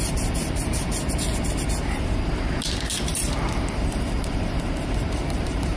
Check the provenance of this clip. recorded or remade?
remade